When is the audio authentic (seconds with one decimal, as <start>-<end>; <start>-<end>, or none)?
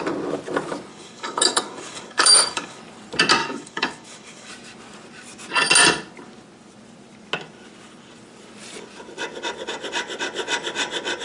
0.0-0.9; 2.8-3.4; 4.5-11.2